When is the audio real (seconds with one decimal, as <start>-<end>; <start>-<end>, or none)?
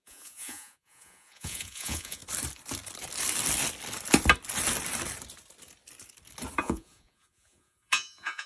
2.2-6.6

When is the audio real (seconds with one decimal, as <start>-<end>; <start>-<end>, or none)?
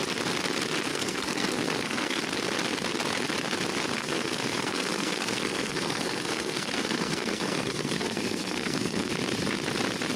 0.0-0.9; 2.2-4.0; 9.1-10.2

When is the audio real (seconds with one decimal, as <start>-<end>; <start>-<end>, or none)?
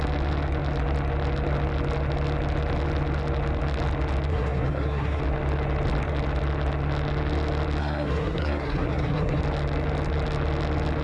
0.0-4.3; 5.2-7.8; 9.4-11.0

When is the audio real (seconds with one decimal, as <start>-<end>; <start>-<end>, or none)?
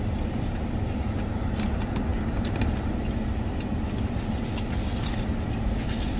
0.0-6.2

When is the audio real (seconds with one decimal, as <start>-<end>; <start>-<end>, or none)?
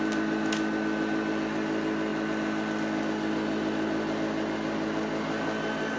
0.0-6.0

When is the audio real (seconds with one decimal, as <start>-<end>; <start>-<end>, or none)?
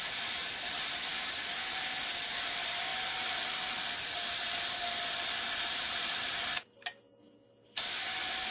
0.0-8.5